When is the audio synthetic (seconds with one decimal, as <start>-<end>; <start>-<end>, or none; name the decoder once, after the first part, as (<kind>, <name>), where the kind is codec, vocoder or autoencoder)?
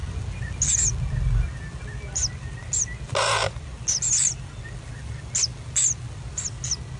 none